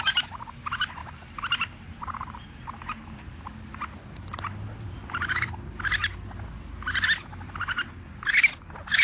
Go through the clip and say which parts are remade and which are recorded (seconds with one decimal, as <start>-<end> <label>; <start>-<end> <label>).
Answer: 0.0-9.0 recorded